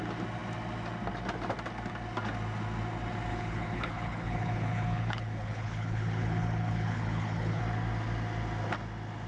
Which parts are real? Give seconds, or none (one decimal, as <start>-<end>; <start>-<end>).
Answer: 0.0-3.3; 7.6-9.3

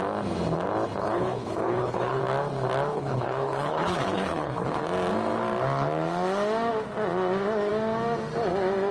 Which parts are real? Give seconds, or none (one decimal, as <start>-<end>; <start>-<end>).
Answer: 0.0-1.0; 2.2-2.9; 4.8-8.9

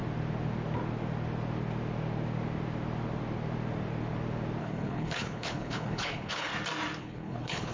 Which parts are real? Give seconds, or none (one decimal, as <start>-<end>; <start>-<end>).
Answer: 0.0-4.6; 6.5-7.0

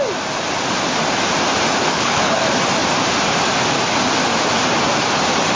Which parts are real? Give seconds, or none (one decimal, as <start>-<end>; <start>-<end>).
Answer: 0.0-1.8; 2.4-5.6

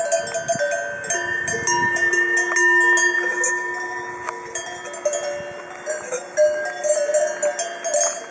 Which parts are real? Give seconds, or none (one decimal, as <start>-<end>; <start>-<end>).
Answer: 0.0-8.3